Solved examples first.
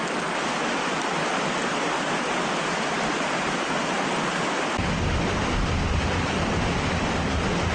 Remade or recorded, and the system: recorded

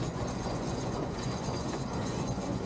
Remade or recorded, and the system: remade, vocoder, Vocos